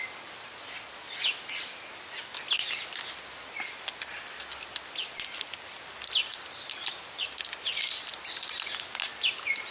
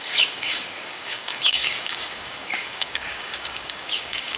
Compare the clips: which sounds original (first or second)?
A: first